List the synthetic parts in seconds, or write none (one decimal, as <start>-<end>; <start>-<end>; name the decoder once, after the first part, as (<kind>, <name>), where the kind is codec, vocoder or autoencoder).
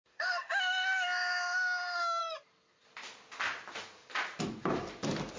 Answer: 0.0-2.2 (autoencoder, DAC-VAE)